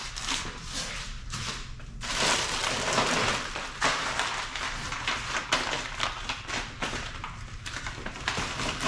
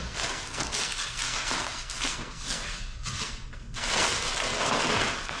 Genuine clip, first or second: first